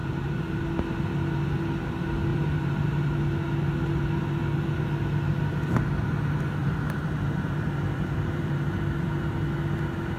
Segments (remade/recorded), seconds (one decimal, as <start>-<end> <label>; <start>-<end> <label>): 0.0-0.6 remade; 0.6-2.3 recorded; 2.3-3.2 remade; 3.2-6.6 recorded; 6.6-8.6 remade; 8.6-10.2 recorded